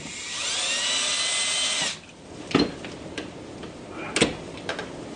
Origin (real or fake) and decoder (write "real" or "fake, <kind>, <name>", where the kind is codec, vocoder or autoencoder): real